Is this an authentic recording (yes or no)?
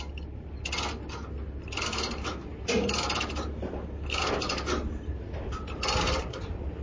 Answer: yes